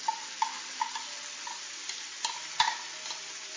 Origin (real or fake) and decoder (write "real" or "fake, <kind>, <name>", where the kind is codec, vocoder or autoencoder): real